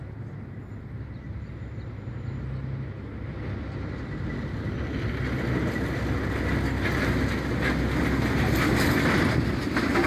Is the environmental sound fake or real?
real